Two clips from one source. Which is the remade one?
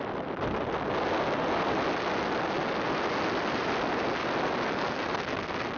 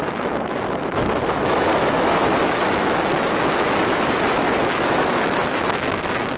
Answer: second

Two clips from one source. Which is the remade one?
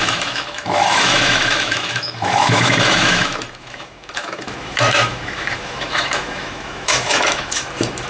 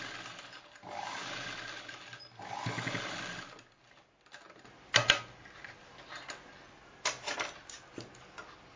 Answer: first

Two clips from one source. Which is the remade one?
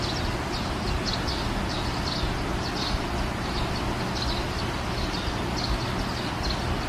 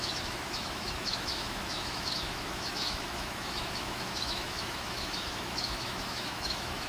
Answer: second